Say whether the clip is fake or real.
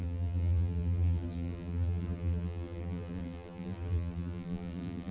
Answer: fake